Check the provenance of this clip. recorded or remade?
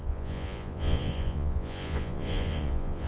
remade